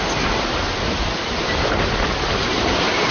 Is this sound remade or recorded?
recorded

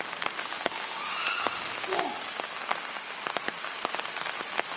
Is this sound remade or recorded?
recorded